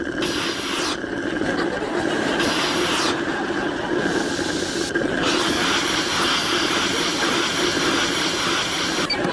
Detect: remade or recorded recorded